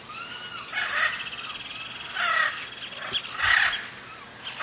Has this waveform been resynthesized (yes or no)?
no